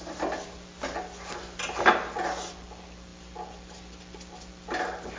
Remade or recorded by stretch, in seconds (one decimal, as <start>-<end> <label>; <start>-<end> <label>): 0.0-5.2 recorded